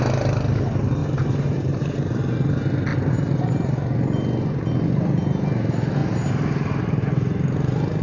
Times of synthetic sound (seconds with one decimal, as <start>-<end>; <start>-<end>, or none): 1.0-2.2